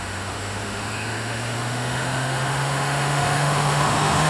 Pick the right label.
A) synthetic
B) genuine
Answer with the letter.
A